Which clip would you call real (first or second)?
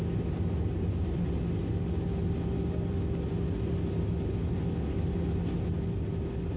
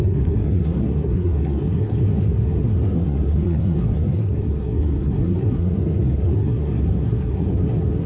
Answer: first